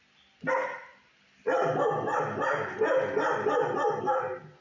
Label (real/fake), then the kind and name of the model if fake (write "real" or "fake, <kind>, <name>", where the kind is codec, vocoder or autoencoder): real